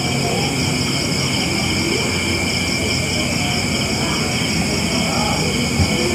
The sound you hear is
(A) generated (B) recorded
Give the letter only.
B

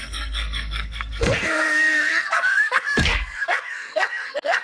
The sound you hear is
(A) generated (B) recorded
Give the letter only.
A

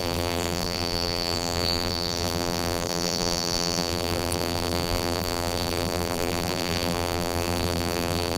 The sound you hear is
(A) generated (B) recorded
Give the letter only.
A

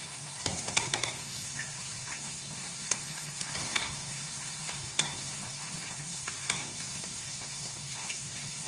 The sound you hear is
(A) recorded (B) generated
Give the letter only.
B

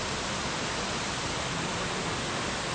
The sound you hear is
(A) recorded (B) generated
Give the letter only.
A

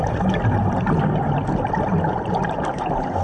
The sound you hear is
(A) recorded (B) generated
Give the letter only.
A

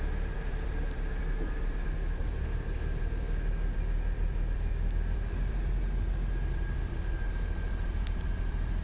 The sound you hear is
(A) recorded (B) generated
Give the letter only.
B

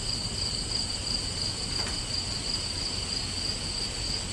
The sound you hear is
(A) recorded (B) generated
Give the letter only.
A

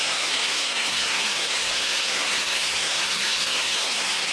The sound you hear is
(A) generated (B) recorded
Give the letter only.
A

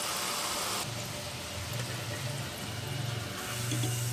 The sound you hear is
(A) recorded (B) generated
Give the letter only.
A